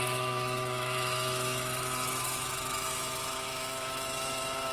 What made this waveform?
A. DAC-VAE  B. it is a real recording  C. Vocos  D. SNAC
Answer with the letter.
A